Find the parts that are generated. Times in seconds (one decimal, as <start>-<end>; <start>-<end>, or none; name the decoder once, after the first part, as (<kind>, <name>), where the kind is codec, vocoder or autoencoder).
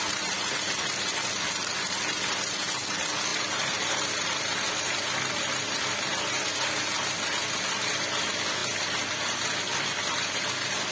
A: 3.3-6.2 (vocoder, BigVGAN v2); 8.6-10.5